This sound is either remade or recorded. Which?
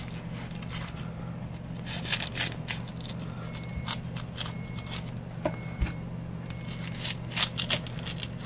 recorded